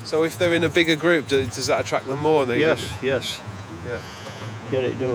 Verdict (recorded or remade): remade